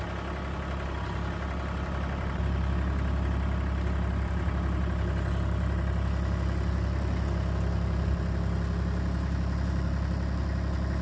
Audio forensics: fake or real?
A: real